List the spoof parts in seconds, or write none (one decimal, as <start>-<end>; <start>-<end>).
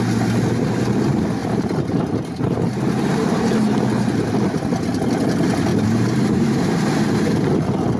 1.4-3.5; 5.7-6.7